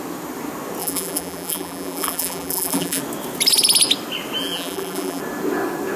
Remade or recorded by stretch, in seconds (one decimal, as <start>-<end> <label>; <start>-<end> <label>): 0.0-0.8 recorded; 0.8-3.0 remade; 3.0-4.4 recorded; 4.4-5.2 remade; 5.2-6.0 recorded

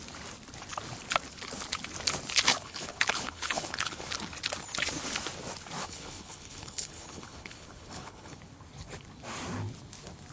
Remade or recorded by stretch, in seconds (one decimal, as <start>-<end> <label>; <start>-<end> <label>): 0.0-2.5 recorded; 2.5-4.1 remade; 4.1-5.8 recorded; 5.8-8.4 remade; 8.4-10.3 recorded